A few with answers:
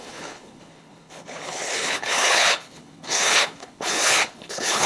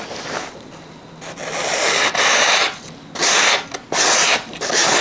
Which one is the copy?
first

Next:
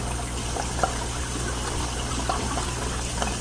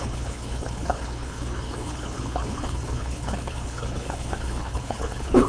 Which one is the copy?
second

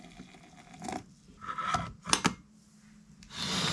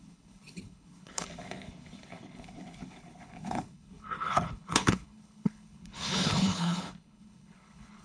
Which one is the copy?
second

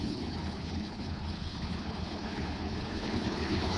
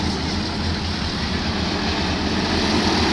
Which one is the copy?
first